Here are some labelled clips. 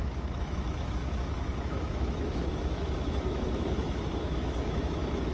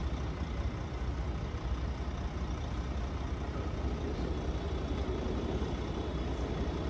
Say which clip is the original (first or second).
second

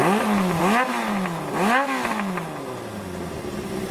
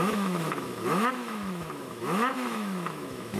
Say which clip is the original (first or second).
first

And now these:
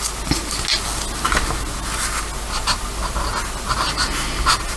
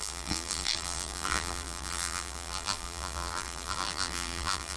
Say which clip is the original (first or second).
first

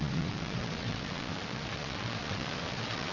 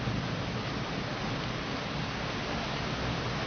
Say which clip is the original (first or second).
second